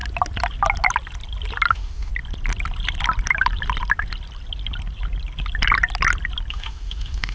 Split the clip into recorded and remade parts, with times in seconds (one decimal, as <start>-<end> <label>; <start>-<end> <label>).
0.0-1.7 recorded; 1.7-2.1 remade; 2.1-6.5 recorded; 6.5-7.3 remade